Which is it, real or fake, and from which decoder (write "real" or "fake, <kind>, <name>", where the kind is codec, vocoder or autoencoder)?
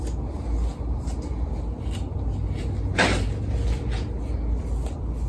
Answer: real